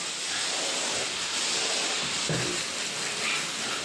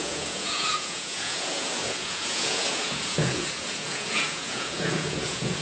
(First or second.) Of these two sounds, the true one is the first